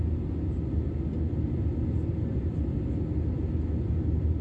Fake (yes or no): no